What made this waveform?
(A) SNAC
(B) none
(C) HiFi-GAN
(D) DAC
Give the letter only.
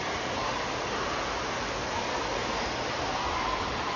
B